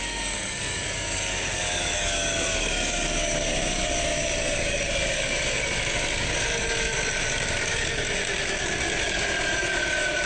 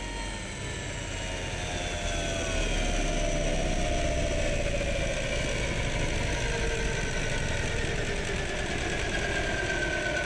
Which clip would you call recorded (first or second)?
second